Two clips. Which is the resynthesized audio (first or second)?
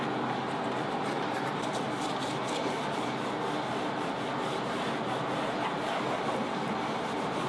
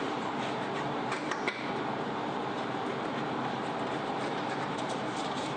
second